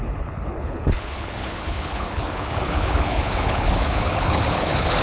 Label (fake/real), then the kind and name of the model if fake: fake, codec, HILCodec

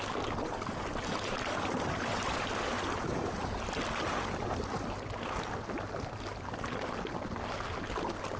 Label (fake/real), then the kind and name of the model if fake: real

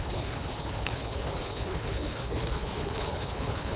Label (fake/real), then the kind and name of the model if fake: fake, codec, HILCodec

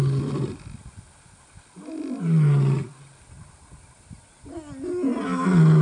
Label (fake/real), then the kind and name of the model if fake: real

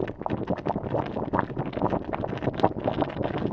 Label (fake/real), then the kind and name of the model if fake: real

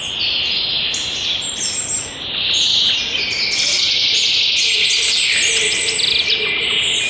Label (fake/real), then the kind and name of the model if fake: real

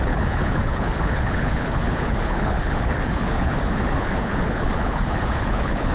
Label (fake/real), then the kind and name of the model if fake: fake, codec, HILCodec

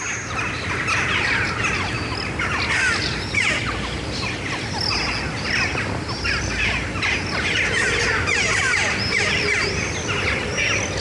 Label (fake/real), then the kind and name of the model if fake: real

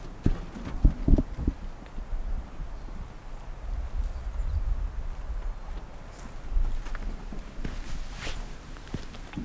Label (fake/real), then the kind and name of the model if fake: real